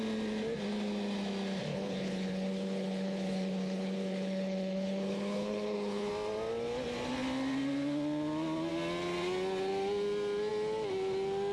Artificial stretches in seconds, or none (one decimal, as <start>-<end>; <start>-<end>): 1.7-6.1